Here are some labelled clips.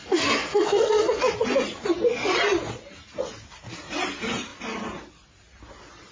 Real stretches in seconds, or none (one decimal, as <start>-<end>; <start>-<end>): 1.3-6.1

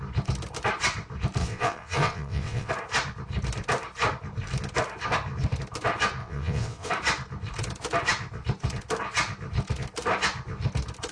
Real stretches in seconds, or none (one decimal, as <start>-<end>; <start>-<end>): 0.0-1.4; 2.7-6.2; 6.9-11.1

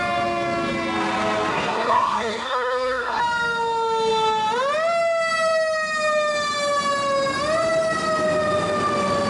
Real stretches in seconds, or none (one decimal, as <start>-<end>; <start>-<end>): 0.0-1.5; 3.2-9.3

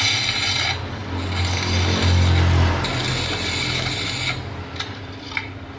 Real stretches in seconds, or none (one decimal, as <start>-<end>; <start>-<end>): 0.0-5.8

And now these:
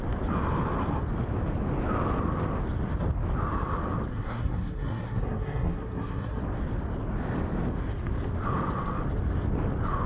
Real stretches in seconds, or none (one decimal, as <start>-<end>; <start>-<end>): 0.0-4.1; 6.4-10.1

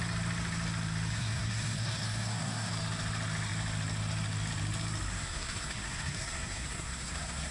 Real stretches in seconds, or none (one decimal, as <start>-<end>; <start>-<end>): 0.0-1.1; 2.7-5.1

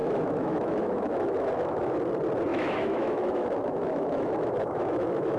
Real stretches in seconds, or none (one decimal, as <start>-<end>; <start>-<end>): 2.0-2.5